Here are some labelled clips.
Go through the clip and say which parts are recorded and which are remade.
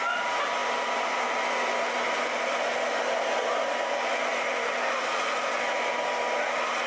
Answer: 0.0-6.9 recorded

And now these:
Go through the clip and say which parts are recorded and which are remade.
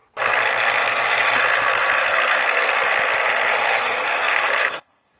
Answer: 0.0-2.0 recorded; 2.0-2.7 remade; 2.7-3.6 recorded; 3.6-5.2 remade